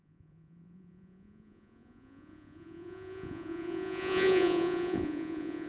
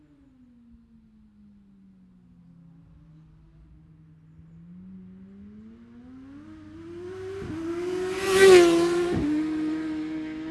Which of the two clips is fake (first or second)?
first